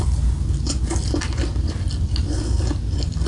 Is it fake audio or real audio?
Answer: real